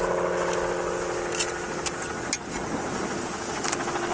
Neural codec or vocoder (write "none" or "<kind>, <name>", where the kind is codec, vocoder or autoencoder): none